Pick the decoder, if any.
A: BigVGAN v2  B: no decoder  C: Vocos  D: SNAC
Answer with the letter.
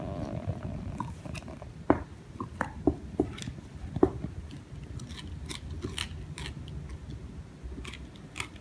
B